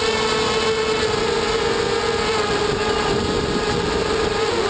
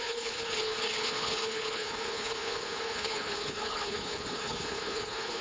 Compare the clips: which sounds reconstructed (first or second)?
second